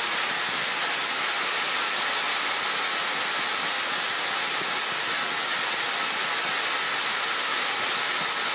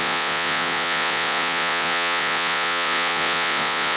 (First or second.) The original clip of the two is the first